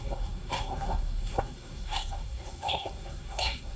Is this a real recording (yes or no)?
no